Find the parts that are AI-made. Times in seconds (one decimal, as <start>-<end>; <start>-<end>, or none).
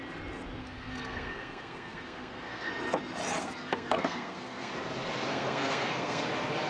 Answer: 0.6-2.7; 3.4-4.7; 5.3-6.2